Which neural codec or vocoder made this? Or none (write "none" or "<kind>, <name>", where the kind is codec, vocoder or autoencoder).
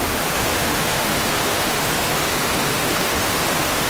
autoencoder, DAC-VAE